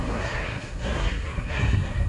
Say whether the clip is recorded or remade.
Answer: remade